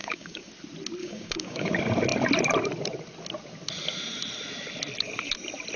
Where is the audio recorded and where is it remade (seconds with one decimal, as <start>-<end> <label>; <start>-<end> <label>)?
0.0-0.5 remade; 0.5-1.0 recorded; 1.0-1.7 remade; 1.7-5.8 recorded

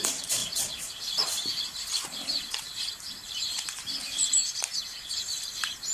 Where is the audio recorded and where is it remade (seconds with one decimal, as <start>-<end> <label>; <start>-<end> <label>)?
0.0-0.4 remade; 0.4-1.6 recorded; 1.6-4.4 remade; 4.4-5.1 recorded; 5.1-5.9 remade

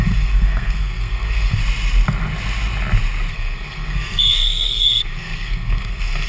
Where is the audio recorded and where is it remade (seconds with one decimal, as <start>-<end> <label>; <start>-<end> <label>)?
0.0-1.6 remade; 1.6-3.3 recorded; 3.3-6.3 remade